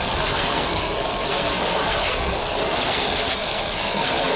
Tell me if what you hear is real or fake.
fake